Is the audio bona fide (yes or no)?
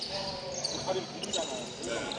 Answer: yes